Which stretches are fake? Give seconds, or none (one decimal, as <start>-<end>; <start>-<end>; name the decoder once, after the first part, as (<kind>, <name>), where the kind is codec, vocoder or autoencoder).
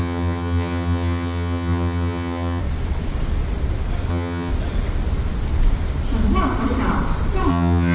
0.0-2.6 (vocoder, HiFi-GAN); 4.1-4.5; 7.5-7.9